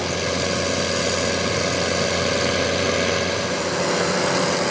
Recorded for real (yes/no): yes